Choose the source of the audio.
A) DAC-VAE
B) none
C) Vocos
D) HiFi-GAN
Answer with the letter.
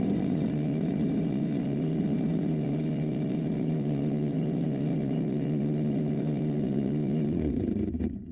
C